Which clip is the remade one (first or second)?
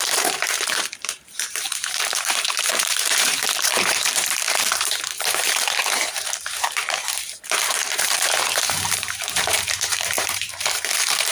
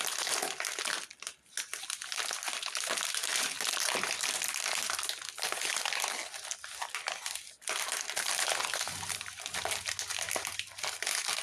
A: first